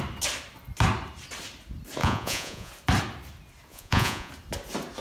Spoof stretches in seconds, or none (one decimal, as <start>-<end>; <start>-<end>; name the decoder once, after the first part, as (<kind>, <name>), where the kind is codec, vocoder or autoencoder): 2.0-2.7 (vocoder, Vocos); 3.7-4.3